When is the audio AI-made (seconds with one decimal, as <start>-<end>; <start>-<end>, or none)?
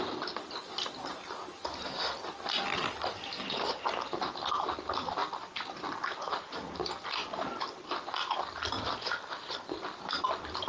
5.2-5.8; 7.2-10.2